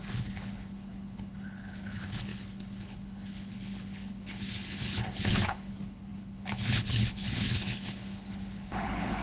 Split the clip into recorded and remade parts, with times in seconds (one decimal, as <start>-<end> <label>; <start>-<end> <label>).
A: 0.0-9.2 remade